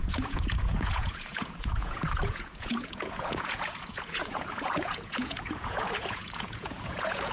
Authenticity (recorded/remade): remade